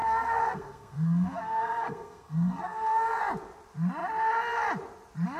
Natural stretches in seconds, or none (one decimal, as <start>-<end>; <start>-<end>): 3.2-5.4